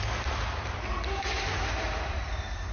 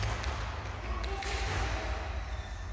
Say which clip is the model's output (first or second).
first